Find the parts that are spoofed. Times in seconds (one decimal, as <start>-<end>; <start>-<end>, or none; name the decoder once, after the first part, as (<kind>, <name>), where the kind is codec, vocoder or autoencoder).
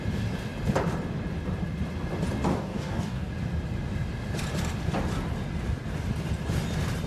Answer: 2.5-3.3 (codec, DAC)